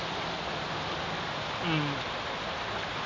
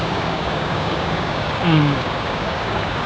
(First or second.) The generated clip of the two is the second